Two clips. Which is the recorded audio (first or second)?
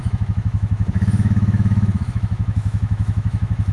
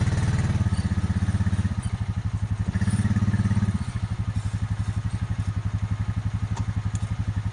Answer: second